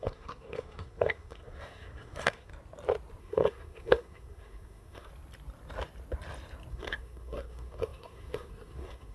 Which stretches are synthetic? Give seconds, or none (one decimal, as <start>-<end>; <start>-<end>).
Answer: 0.0-2.5; 3.2-5.1; 6.7-9.1